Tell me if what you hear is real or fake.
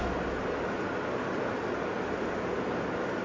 real